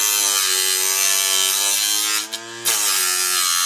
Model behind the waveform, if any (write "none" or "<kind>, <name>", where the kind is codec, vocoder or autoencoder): none